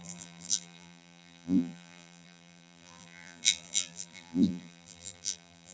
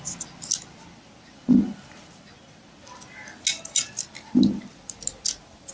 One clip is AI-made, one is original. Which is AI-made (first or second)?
first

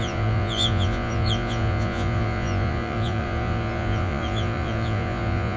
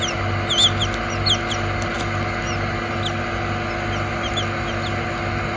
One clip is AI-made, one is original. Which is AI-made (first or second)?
first